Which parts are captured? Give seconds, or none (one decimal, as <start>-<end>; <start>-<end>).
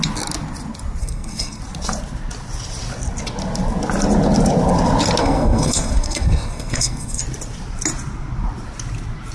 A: 0.0-1.0; 1.6-5.2; 7.2-9.3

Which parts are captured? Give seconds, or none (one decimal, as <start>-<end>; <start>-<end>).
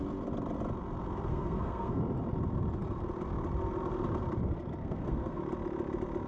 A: 0.0-1.3; 2.0-4.8; 5.4-6.3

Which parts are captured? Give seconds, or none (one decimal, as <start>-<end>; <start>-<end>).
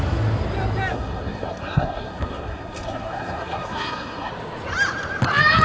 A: 0.0-0.9; 4.3-5.6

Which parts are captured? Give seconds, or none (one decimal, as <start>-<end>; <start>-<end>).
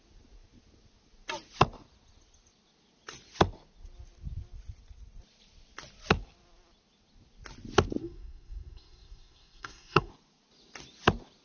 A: 0.0-8.0; 10.1-11.4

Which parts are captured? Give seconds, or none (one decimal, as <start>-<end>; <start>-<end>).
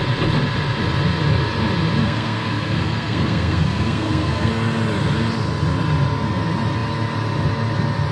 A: 0.0-2.0; 4.5-8.1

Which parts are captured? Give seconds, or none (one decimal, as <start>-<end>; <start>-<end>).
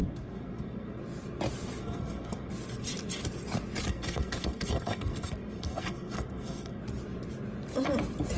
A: 1.0-1.8; 2.5-3.9; 6.8-8.4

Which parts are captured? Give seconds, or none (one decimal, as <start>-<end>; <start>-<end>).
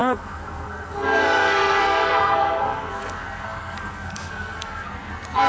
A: none